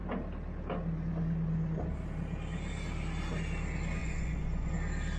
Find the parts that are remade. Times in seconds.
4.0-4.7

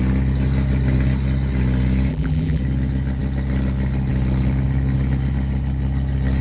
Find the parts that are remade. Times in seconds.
2.1-2.6